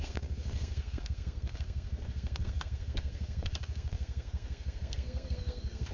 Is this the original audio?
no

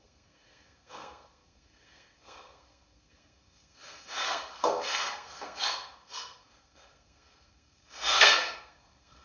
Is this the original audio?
no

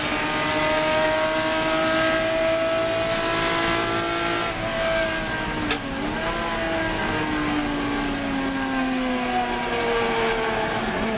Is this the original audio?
yes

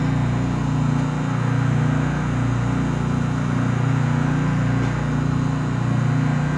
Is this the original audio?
yes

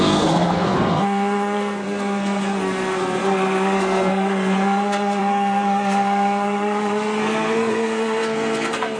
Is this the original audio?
no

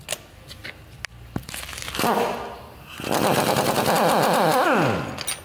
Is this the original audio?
yes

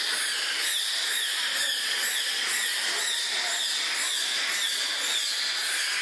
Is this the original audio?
yes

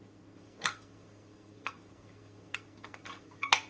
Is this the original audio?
no